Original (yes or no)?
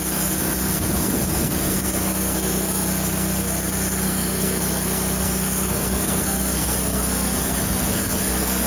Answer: no